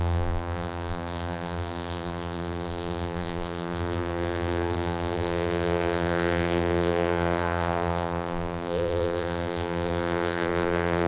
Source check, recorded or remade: remade